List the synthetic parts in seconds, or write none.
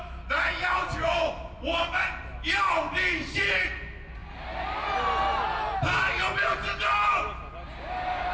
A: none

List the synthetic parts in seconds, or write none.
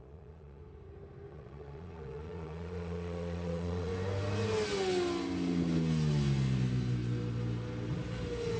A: 0.0-0.6 (vocoder, Vocos); 1.3-3.9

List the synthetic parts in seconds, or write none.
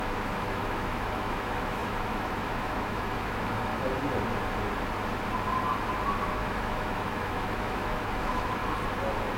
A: 0.0-3.7 (autoencoder, DAC-VAE); 6.3-8.6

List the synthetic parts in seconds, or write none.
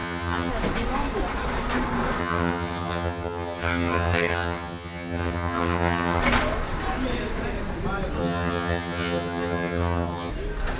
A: 0.0-0.5 (vocoder, HiFi-GAN); 2.2-6.2; 8.2-10.3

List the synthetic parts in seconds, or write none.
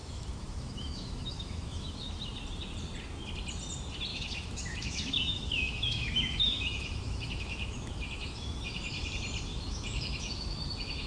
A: 0.0-2.1 (autoencoder, DAC-VAE); 4.1-9.1; 9.5-11.1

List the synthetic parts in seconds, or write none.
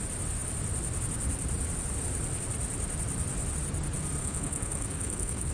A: 4.2-5.5 (codec, SNAC)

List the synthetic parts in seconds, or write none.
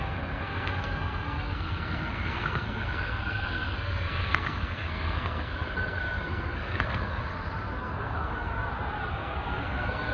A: 0.0-7.2 (codec, SNAC); 7.8-8.5; 9.1-10.1